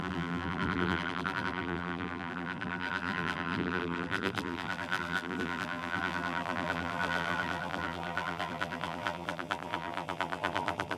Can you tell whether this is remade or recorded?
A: remade